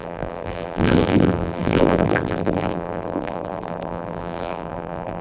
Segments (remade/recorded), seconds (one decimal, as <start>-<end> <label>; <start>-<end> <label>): 0.0-5.2 remade